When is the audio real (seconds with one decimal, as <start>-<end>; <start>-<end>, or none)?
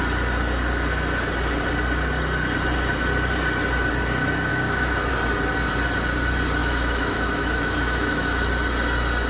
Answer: 0.0-4.5; 5.1-6.6; 8.5-9.3